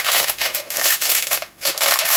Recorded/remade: remade